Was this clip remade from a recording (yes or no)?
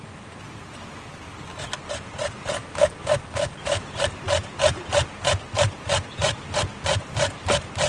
no